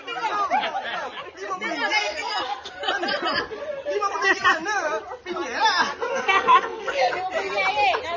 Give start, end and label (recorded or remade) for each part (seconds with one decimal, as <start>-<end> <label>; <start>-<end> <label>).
0.0-2.0 recorded; 2.0-2.7 remade; 2.7-6.1 recorded; 6.1-7.1 remade; 7.1-8.2 recorded